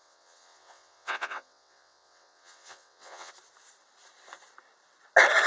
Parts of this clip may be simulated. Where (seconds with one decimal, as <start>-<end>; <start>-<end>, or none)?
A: 0.0-3.3